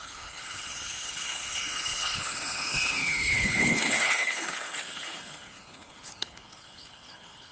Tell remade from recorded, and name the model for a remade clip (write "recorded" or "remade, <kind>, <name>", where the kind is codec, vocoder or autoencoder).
remade, codec, HILCodec